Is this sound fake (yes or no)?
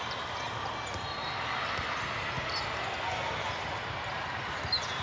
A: no